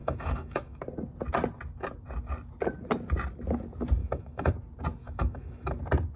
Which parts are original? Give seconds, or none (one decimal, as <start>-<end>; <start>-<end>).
0.8-4.0; 4.5-5.0; 5.7-6.2